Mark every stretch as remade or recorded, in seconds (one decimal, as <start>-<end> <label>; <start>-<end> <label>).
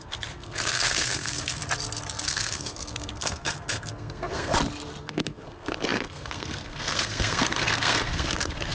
0.0-1.6 remade; 1.6-2.2 recorded; 2.2-4.5 remade; 4.5-5.0 recorded; 5.0-8.7 remade